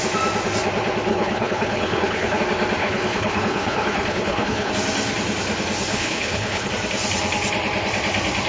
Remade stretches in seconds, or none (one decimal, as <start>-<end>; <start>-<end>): 1.1-2.4; 2.8-4.7; 5.9-6.7

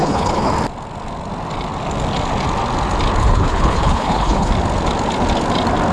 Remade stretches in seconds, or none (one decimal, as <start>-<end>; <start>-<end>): 0.0-0.5; 3.2-4.5

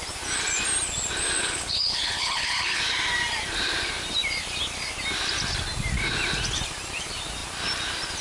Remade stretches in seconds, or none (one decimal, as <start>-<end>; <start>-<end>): 1.4-2.8

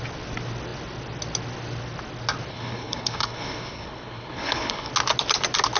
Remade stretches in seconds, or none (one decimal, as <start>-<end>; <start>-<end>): 2.5-4.9

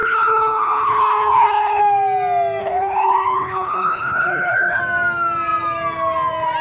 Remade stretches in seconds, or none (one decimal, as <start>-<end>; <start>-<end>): 0.0-1.8; 2.6-4.8

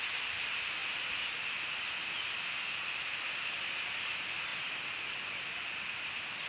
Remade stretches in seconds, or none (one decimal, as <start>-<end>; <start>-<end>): none